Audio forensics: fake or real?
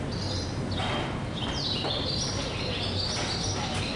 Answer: real